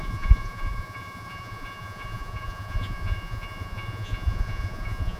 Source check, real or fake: fake